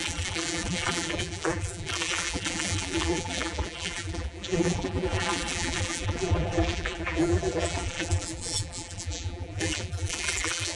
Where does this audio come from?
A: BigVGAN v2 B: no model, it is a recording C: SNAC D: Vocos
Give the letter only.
A